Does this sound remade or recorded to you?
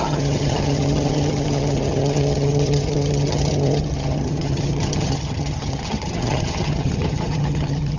remade